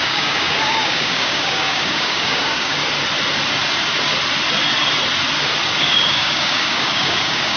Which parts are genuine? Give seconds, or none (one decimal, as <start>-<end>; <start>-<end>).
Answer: 2.8-5.8

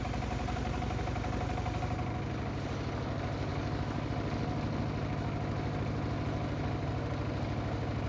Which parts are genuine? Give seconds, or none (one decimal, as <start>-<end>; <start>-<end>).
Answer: 0.0-3.5; 4.1-8.1

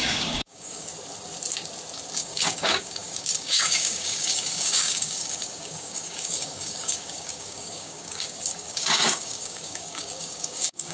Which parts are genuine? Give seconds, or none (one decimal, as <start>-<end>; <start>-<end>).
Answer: 0.9-2.2

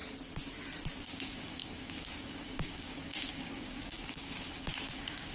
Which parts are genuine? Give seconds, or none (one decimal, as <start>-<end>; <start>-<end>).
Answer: 0.0-1.0

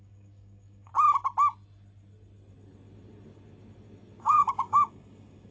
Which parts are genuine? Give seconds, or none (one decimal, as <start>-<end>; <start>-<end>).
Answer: 0.9-4.2

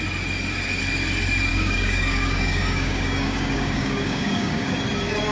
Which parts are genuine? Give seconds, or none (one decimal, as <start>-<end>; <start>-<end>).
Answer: 0.0-1.5; 4.7-5.3

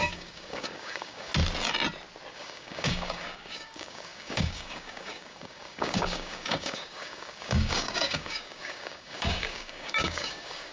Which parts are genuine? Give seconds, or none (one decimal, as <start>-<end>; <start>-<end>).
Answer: 1.3-2.3

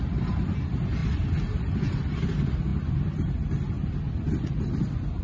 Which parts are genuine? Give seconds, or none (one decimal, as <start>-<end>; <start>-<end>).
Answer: 0.0-5.2